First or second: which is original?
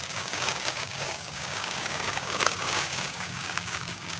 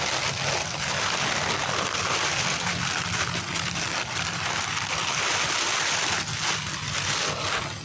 second